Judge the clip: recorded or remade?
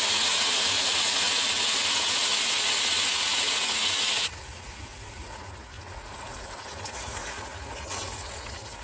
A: remade